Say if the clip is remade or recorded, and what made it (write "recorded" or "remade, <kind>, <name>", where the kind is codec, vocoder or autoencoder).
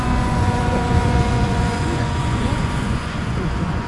remade, vocoder, Vocos